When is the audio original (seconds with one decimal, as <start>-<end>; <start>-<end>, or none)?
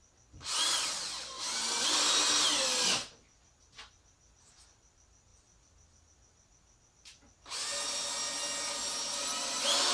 0.0-9.9